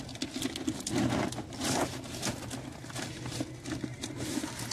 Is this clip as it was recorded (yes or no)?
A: yes